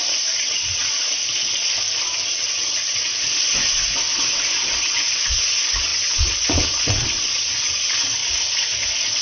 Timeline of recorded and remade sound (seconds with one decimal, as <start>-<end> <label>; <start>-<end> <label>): 0.0-1.2 remade; 1.2-2.3 recorded; 2.3-3.1 remade; 3.1-4.7 recorded; 4.7-8.2 remade; 8.2-9.2 recorded